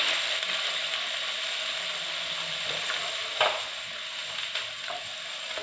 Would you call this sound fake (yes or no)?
no